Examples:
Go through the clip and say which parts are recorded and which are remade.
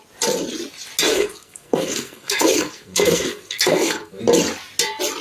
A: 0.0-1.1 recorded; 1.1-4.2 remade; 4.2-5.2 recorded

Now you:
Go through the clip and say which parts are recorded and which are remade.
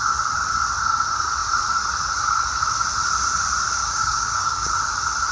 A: 0.0-3.8 recorded; 3.8-4.7 remade; 4.7-5.3 recorded